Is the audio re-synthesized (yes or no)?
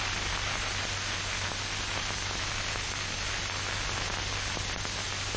no